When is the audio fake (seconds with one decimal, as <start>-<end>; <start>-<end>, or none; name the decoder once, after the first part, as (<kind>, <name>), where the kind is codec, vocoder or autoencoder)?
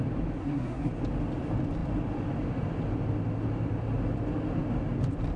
0.4-0.9 (codec, SNAC)